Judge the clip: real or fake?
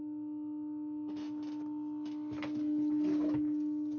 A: real